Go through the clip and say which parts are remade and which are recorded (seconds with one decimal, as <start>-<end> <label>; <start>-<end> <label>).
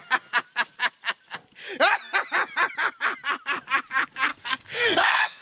0.0-4.3 recorded; 4.3-5.4 remade